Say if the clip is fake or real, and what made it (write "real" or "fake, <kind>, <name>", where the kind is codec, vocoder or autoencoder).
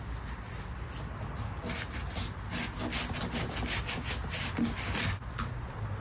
real